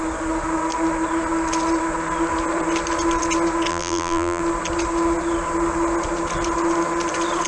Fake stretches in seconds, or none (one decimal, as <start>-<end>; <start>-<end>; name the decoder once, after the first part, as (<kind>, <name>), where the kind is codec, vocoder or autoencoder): 3.7-4.4 (vocoder, BigVGAN v2)